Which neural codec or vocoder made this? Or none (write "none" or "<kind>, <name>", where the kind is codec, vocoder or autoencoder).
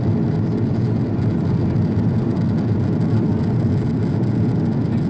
none